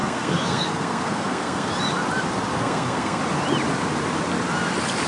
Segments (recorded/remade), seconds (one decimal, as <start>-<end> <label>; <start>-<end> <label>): 0.0-1.7 remade; 1.7-2.5 recorded; 2.5-3.2 remade; 3.2-5.1 recorded

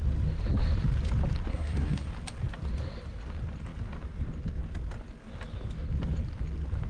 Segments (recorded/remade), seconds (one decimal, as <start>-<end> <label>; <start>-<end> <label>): 0.0-1.5 recorded; 1.5-2.1 remade; 2.1-6.9 recorded

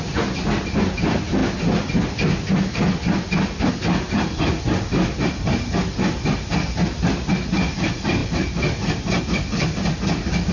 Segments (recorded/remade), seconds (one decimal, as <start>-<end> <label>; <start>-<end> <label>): 0.0-10.5 recorded

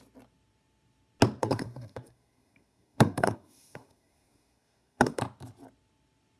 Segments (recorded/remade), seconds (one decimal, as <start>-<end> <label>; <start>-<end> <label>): 0.0-1.4 recorded; 1.4-5.2 remade; 5.2-6.4 recorded